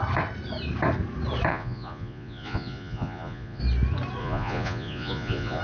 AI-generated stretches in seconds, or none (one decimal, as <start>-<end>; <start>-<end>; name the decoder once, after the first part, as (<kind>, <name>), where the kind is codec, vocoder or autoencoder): 1.5-3.6 (vocoder, Vocos); 4.2-5.6